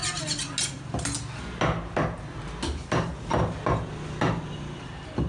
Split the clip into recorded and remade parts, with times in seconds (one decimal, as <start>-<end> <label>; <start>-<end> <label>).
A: 0.0-5.3 recorded